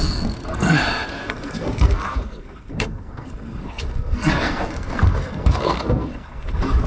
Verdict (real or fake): fake